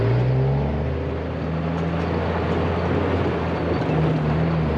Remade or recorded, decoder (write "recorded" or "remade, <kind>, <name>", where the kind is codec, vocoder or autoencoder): recorded